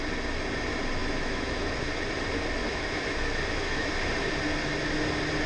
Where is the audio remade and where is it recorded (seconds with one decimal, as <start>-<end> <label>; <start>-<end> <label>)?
0.0-1.0 recorded; 1.0-1.7 remade; 1.7-2.6 recorded; 2.6-3.9 remade; 3.9-5.5 recorded